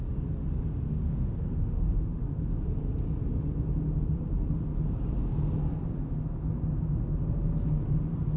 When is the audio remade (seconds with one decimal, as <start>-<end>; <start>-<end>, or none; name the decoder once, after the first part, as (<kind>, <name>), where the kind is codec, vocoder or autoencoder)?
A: 0.9-2.2 (autoencoder, DAC-VAE)

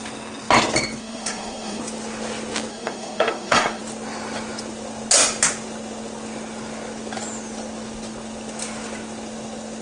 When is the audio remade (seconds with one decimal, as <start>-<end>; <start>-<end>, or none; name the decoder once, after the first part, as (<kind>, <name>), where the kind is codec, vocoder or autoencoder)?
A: 1.0-1.8 (codec, SNAC); 2.7-3.8

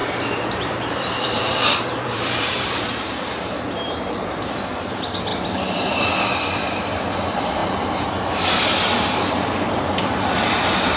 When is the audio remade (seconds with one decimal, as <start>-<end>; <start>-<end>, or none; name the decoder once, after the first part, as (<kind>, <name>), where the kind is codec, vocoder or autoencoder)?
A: 0.0-7.6 (vocoder, BigVGAN v2)

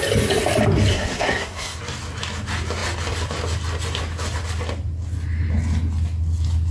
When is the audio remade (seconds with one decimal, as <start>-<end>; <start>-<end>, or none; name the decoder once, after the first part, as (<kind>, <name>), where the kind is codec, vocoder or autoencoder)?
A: 0.9-1.8 (codec, SNAC)

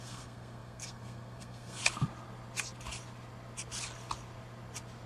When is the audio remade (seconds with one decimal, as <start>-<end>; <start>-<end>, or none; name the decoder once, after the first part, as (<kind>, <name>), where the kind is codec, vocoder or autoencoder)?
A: 0.0-1.8 (codec, SNAC)